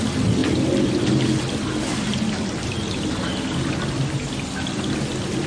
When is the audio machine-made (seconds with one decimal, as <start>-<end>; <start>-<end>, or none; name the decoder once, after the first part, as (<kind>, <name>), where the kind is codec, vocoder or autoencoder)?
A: none